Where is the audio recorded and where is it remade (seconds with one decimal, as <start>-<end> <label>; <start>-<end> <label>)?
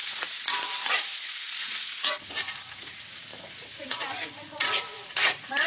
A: 0.0-5.7 remade